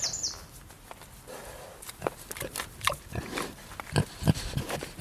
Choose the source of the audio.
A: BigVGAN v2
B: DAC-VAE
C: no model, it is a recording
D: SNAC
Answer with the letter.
C